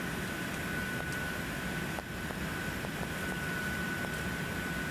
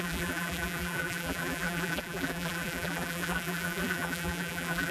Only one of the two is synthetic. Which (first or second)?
second